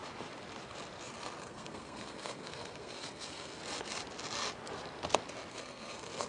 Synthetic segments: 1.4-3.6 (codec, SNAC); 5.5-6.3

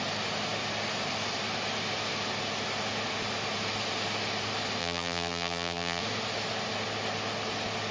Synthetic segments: 4.8-6.0 (vocoder, BigVGAN v2)

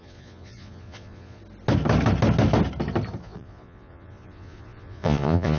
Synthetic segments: 0.0-1.4 (vocoder, Vocos); 3.2-5.6

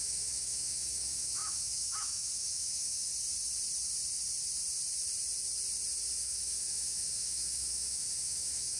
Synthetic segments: 0.0-3.1 (autoencoder, DAC-VAE); 6.2-8.8